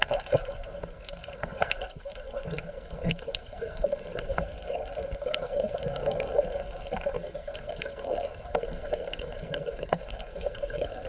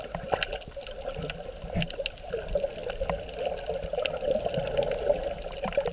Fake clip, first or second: first